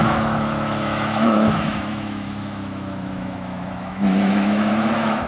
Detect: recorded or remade remade